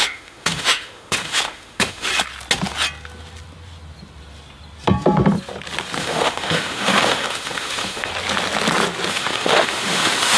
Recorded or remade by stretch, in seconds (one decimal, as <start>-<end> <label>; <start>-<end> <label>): 0.0-2.1 remade; 2.1-6.0 recorded; 6.0-8.1 remade; 8.1-9.1 recorded; 9.1-10.4 remade